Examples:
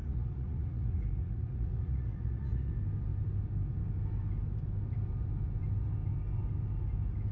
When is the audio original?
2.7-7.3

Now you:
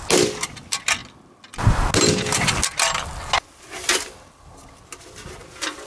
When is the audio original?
0.0-5.9

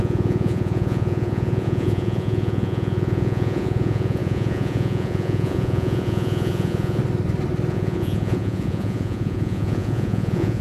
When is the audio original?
7.0-7.7

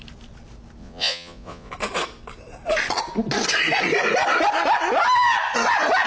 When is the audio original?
0.0-0.8; 1.7-6.1